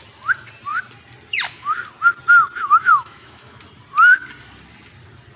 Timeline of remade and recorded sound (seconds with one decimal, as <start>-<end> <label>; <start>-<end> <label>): 0.0-2.9 recorded; 2.9-3.6 remade; 3.6-5.4 recorded